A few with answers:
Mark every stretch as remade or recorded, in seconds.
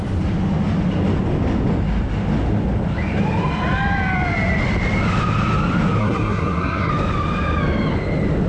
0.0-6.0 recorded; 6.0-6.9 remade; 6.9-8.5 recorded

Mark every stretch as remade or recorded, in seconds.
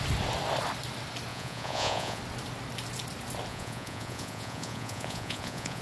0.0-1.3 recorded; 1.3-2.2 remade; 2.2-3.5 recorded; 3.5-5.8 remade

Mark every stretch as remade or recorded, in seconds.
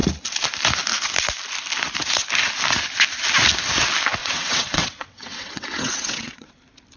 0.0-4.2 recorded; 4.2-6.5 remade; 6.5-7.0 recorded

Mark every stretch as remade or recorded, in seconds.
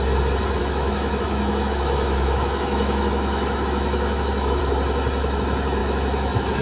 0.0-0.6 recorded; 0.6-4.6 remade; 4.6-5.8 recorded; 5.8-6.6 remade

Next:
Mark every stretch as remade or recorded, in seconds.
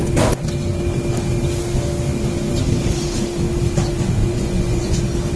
0.0-4.2 recorded; 4.2-5.0 remade; 5.0-5.4 recorded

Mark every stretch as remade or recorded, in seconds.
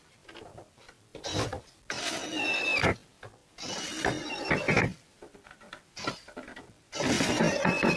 0.0-8.0 recorded